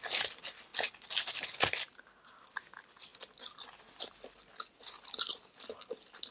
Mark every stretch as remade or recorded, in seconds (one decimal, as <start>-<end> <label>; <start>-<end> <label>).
0.0-6.3 recorded